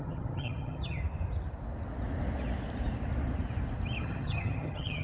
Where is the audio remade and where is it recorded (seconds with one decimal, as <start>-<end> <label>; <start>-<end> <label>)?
0.0-1.0 remade; 1.0-4.0 recorded; 4.0-5.0 remade